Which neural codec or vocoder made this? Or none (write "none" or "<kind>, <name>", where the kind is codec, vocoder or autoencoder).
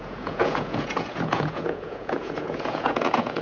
vocoder, Vocos